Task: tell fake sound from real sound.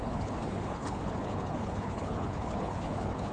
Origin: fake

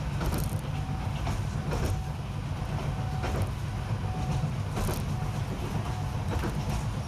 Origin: real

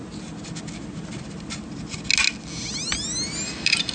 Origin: real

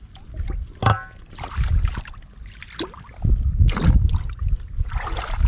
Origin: real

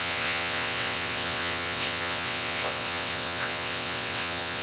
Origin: fake